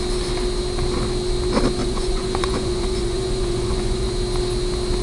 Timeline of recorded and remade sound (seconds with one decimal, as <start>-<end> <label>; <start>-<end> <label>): 0.0-1.8 recorded; 1.8-4.1 remade; 4.1-5.0 recorded